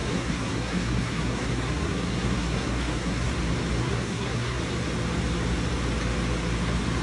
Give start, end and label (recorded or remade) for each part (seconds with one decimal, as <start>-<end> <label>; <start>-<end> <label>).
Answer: 0.0-3.3 remade; 3.3-3.8 recorded; 3.8-4.6 remade; 4.6-7.0 recorded